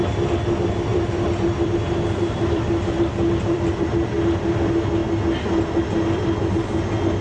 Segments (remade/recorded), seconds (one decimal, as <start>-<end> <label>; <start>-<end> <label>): 0.0-0.9 recorded; 0.9-4.6 remade; 4.6-7.2 recorded